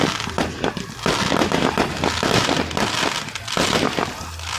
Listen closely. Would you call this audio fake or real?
real